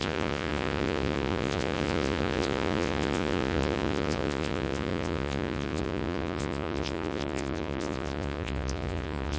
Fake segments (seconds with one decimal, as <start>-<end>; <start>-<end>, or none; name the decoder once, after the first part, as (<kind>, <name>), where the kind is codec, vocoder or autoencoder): 0.0-9.4 (vocoder, Vocos)